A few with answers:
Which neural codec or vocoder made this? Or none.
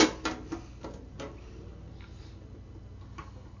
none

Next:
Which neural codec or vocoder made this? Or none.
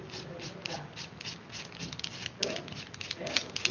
none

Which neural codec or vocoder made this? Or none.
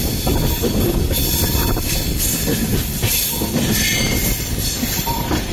vocoder, BigVGAN v2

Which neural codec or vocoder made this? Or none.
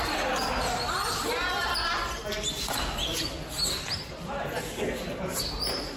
none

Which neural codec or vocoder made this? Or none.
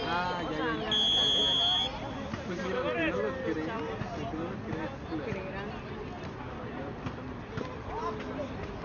none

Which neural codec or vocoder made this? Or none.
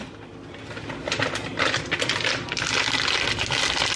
none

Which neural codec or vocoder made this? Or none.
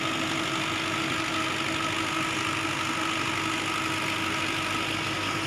none